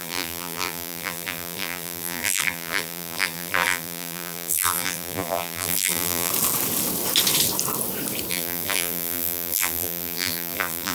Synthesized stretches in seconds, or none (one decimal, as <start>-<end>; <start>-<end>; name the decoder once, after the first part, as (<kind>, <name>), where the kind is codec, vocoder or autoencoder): 0.0-6.3 (vocoder, BigVGAN v2); 8.3-10.9